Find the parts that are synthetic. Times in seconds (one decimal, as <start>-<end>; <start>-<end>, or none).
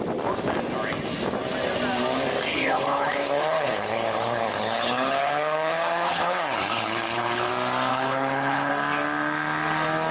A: 2.5-7.5; 7.9-8.7